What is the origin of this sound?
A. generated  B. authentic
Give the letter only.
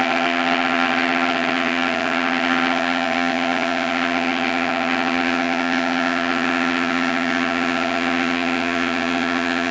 A